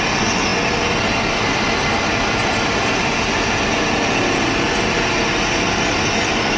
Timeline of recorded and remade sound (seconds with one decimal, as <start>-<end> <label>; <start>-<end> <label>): 0.0-6.6 recorded